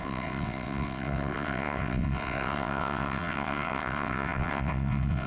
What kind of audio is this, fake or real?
fake